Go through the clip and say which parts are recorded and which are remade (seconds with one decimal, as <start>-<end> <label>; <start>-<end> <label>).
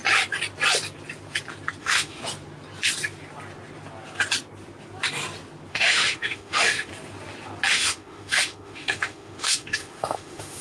0.0-1.8 recorded; 1.8-2.2 remade; 2.2-5.7 recorded; 5.7-6.9 remade; 6.9-7.7 recorded; 7.7-10.6 remade